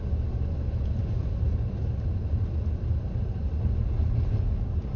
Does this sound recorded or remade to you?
recorded